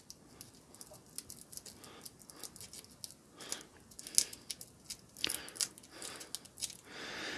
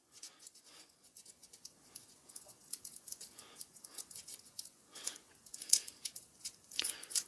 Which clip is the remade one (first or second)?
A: second